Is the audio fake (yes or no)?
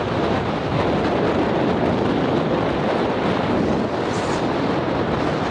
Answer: no